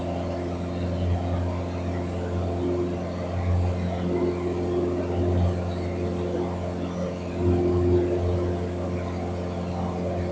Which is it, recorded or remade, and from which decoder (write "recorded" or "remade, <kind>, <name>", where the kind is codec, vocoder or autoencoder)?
recorded